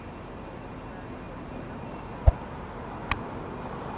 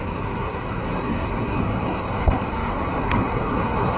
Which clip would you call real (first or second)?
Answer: first